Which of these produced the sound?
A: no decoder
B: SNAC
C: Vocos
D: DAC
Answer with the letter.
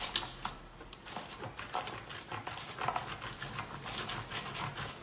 A